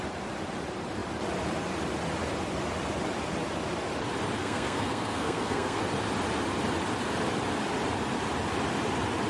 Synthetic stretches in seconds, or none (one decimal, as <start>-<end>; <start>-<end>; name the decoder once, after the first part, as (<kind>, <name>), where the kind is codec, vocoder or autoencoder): 4.4-5.8 (codec, SNAC)